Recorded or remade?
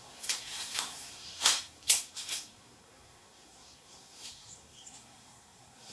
remade